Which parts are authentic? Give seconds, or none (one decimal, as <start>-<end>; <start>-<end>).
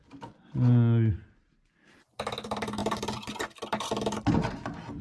0.0-5.0